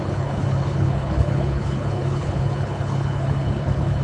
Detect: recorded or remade remade